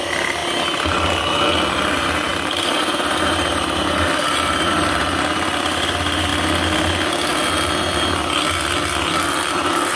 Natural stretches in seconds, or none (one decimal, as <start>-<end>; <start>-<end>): 0.4-1.7; 6.3-9.5